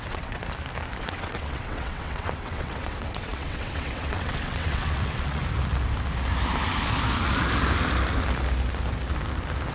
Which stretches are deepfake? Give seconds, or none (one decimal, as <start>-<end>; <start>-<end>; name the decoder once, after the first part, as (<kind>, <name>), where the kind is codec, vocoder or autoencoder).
0.0-0.4 (vocoder, WaveNeXt); 1.0-5.4